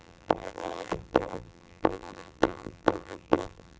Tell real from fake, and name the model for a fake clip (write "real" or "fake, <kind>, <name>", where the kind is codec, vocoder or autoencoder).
fake, vocoder, BigVGAN v2